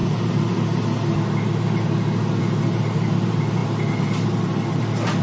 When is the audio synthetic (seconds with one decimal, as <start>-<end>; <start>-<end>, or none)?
none